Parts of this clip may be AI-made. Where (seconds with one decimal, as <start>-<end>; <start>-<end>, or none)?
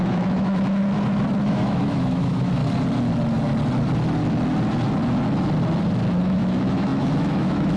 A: 0.0-0.8; 1.5-2.6; 6.2-7.8